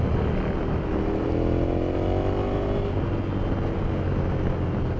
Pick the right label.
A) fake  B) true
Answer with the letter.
B